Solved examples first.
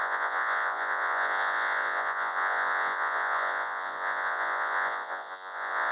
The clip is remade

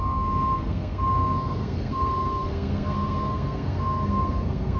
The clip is remade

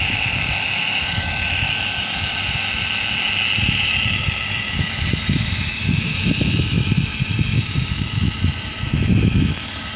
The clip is remade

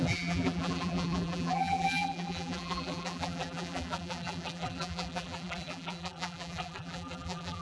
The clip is remade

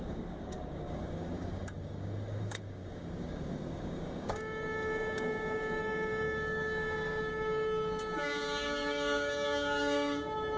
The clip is remade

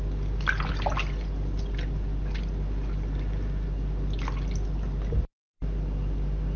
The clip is recorded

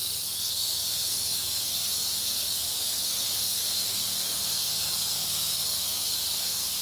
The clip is remade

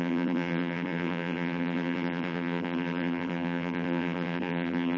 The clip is remade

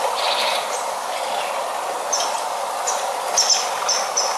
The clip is recorded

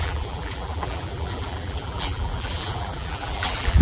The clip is remade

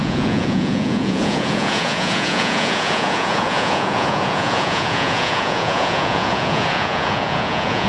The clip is remade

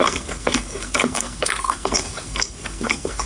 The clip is remade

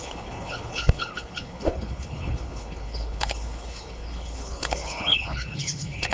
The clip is remade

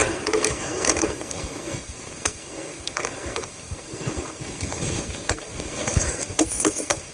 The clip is remade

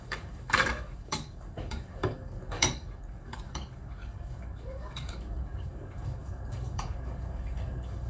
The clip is remade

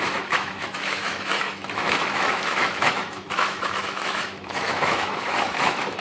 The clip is remade